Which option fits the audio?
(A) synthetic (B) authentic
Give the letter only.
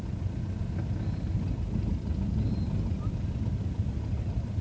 B